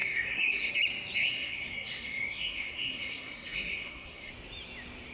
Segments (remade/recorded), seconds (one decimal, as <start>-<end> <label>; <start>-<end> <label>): 0.0-0.7 remade; 0.7-1.2 recorded; 1.2-4.3 remade; 4.3-5.1 recorded